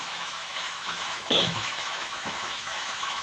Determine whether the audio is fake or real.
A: fake